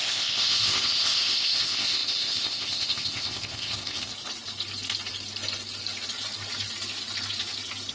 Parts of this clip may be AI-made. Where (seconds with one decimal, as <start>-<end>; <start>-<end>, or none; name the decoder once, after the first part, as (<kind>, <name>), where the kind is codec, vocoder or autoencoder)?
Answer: 0.0-4.1 (codec, ZipCodec)